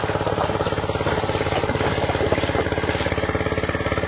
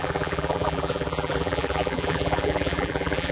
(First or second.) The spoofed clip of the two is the second